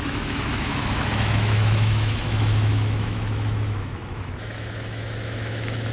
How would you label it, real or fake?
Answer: fake